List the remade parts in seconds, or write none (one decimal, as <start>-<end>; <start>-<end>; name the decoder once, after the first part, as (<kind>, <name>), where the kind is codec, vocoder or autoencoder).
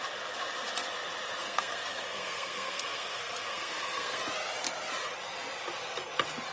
1.4-4.2 (codec, SNAC)